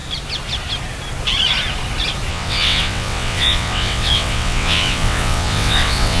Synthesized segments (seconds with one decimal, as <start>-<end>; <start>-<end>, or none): 2.3-6.2